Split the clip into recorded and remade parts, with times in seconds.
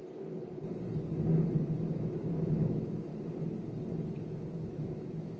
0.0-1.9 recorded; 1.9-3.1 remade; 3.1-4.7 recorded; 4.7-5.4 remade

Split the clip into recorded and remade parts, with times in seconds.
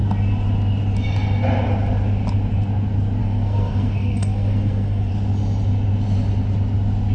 0.0-3.2 recorded; 3.2-5.1 remade; 5.1-7.1 recorded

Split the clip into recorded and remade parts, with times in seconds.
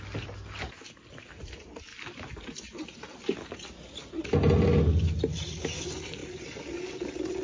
0.0-7.4 recorded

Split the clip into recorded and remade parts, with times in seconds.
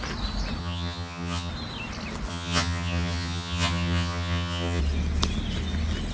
0.0-0.6 recorded; 0.6-1.5 remade; 1.5-2.3 recorded; 2.3-4.8 remade; 4.8-6.1 recorded